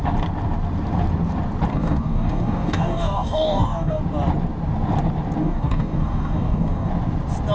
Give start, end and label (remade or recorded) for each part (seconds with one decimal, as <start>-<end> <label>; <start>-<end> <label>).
0.0-1.7 recorded; 1.7-4.0 remade; 4.0-5.4 recorded; 5.4-6.9 remade; 6.9-7.5 recorded